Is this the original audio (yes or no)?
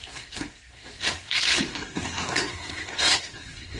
no